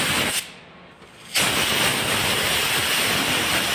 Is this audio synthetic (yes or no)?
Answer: no